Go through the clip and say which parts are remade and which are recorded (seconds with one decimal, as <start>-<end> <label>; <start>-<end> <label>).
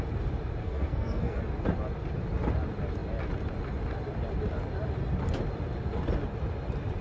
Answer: 0.0-0.6 recorded; 0.6-1.4 remade; 1.4-7.0 recorded